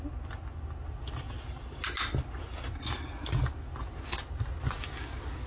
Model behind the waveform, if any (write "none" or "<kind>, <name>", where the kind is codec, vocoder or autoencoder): none